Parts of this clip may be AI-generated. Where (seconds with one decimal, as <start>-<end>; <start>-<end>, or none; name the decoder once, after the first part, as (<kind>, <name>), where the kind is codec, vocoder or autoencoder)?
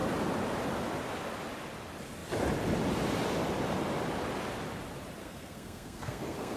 5.2-6.6 (codec, SNAC)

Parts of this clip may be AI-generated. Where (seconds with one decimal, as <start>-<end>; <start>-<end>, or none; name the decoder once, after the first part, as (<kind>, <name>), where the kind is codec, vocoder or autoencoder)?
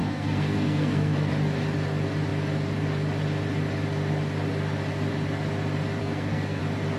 0.0-1.3 (codec, SNAC); 6.0-6.6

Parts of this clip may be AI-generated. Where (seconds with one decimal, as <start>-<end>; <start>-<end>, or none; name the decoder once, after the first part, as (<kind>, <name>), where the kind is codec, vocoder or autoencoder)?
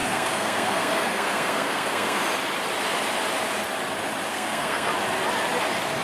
0.0-2.2 (codec, SNAC); 4.3-4.9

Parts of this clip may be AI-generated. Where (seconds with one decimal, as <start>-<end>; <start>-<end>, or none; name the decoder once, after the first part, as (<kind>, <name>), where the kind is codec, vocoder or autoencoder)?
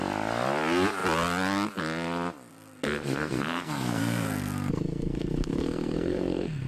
2.5-6.7 (codec, SNAC)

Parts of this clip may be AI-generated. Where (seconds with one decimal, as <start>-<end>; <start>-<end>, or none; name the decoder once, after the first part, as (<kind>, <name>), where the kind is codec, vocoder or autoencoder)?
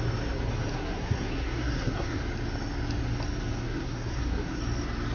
0.7-2.2 (codec, SNAC); 3.6-4.6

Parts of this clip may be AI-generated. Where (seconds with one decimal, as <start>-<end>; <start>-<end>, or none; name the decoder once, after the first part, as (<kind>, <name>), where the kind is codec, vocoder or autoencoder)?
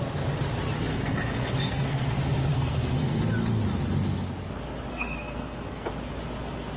0.9-2.1 (codec, SNAC); 2.5-3.2; 4.9-5.9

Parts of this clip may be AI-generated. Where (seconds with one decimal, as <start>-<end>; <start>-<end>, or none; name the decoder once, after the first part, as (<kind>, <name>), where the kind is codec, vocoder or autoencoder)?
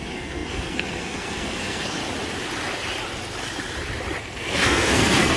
0.0-2.0 (codec, SNAC); 4.2-5.4